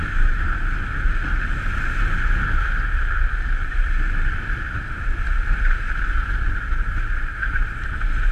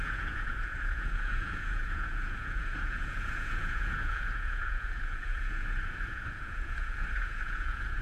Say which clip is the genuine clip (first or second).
first